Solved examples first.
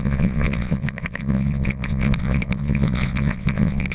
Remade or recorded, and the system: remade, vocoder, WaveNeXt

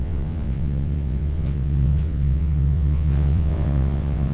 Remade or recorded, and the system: remade, vocoder, WaveNeXt